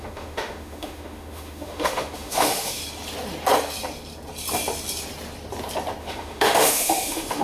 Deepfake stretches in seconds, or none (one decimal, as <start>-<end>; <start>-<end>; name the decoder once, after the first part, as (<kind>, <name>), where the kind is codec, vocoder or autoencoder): 0.0-2.8 (autoencoder, DAC-VAE); 6.0-7.4